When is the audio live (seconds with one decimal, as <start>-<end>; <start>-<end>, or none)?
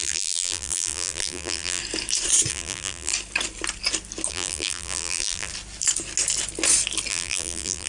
1.8-2.5; 3.1-4.3; 5.5-7.1